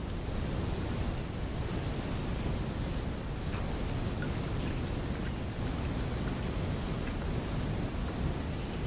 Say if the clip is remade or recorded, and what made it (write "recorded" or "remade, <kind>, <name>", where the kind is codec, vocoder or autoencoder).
recorded